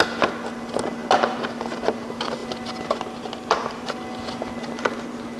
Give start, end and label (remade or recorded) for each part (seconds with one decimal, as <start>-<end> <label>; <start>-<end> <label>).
0.0-5.4 recorded